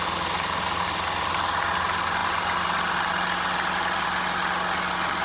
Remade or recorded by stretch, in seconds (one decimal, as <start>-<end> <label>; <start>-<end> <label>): 0.0-5.2 recorded